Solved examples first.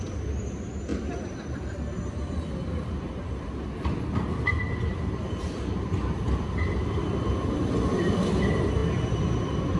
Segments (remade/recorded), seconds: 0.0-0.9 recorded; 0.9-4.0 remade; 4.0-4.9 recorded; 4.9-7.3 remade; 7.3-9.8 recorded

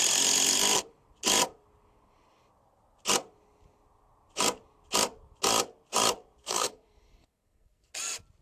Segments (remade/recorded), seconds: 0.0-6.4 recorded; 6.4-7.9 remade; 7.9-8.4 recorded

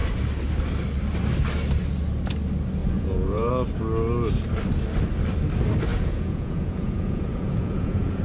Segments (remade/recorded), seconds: 0.0-2.8 recorded; 2.8-3.5 remade; 3.5-5.9 recorded; 5.9-8.2 remade

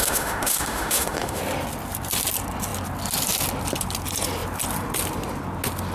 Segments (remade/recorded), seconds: 0.0-1.4 remade; 1.4-5.9 recorded

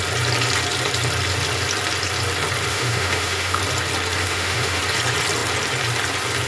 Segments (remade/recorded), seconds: 0.0-2.7 recorded; 2.7-3.6 remade; 3.6-4.2 recorded; 4.2-4.8 remade; 4.8-6.5 recorded

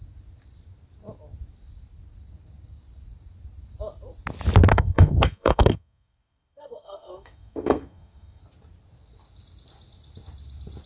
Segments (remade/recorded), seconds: 0.0-4.7 recorded; 4.7-8.4 remade; 8.4-10.9 recorded